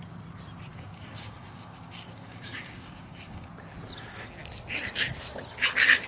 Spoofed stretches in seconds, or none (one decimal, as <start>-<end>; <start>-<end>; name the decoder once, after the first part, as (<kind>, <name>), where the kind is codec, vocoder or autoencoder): 0.7-3.5 (codec, DAC)